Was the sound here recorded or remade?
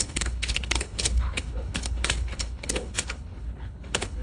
remade